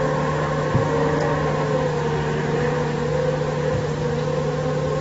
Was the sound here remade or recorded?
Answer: recorded